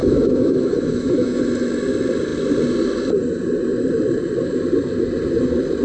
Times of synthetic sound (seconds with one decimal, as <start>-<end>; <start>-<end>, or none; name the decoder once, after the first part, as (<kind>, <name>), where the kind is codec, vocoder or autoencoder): 0.0-1.4 (autoencoder, DAC-VAE)